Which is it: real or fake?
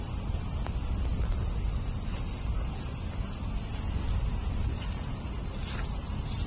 real